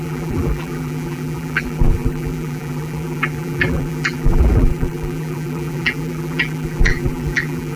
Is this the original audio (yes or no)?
no